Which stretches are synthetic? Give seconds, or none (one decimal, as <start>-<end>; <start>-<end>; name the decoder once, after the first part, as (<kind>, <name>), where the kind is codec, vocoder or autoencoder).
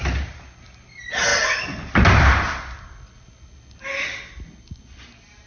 none